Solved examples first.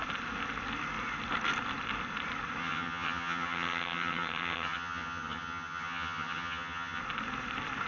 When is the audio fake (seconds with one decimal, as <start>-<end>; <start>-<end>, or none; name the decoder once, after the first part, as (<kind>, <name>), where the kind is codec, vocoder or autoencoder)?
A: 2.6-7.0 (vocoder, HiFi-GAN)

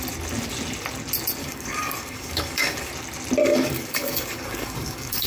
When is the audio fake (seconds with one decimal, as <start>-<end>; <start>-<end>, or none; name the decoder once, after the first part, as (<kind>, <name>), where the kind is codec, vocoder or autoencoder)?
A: 1.4-2.9 (codec, DAC); 3.4-5.3

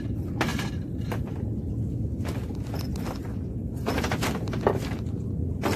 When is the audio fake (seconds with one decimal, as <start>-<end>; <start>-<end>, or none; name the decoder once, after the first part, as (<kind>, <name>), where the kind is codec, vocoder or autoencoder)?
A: none